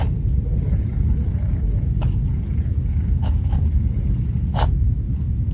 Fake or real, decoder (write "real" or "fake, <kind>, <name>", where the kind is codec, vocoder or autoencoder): real